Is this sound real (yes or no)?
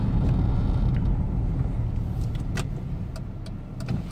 yes